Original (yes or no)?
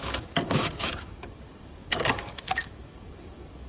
no